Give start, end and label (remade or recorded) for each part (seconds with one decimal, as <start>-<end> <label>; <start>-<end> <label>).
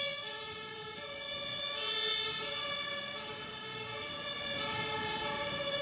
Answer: 0.0-5.8 recorded